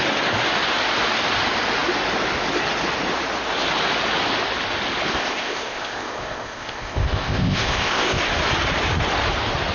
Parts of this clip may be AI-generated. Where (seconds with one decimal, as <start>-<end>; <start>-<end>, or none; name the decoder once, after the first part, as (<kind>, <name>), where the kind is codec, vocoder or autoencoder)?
5.1-8.2 (codec, ZipCodec)